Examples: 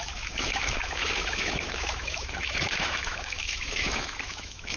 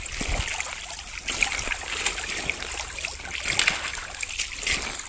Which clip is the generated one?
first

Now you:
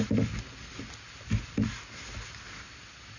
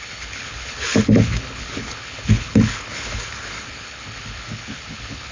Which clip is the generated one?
second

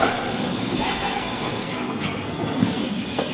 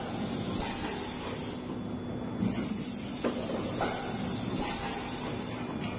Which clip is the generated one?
first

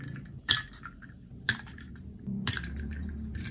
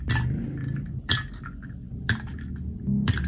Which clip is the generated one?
first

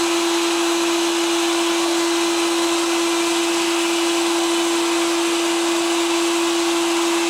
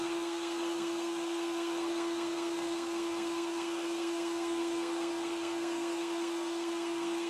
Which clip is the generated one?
second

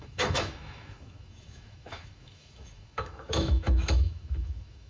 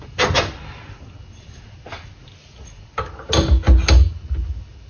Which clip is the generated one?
first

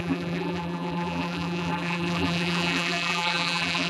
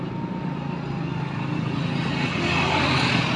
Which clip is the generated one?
first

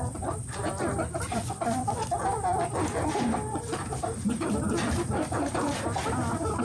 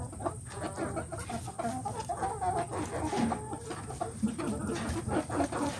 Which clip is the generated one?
first